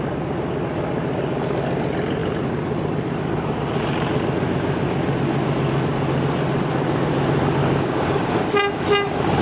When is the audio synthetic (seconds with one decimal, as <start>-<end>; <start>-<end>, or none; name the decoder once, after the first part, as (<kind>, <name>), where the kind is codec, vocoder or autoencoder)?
7.6-8.3 (codec, DAC)